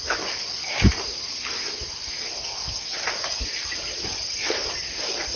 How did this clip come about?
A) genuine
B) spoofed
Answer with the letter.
A